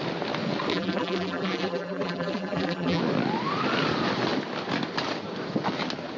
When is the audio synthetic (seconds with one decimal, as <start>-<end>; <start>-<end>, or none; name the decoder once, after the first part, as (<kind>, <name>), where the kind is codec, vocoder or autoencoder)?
0.7-3.0 (vocoder, BigVGAN v2)